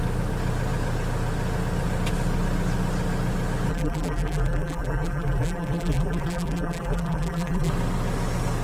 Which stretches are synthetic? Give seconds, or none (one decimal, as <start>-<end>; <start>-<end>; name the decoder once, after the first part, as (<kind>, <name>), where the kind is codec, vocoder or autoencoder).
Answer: 3.7-7.7 (vocoder, BigVGAN v2)